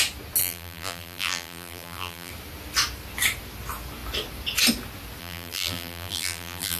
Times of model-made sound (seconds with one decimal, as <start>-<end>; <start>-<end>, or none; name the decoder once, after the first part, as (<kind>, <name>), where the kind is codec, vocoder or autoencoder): 0.4-2.3 (vocoder, BigVGAN v2); 5.2-6.8